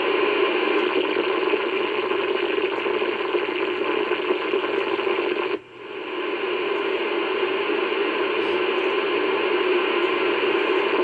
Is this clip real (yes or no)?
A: yes